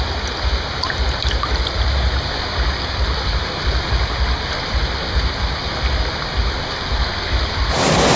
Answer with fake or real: real